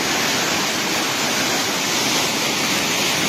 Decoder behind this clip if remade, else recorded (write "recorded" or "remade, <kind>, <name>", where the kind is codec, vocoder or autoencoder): recorded